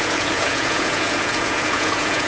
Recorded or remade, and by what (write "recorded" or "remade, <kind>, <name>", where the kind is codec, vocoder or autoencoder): remade, vocoder, Vocos